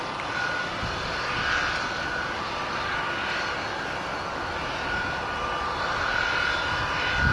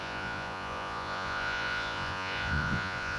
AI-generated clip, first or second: second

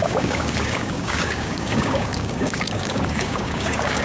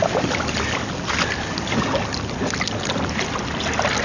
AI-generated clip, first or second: first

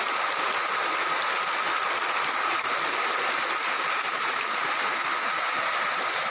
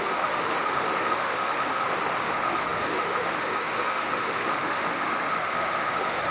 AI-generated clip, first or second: second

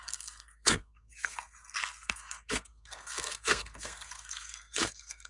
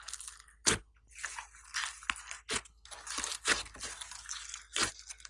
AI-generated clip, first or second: first